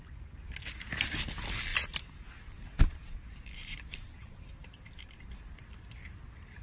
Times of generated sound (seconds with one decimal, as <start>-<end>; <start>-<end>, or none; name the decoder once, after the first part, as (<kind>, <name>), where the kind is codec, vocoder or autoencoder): 1.7-5.3 (vocoder, BigVGAN v2)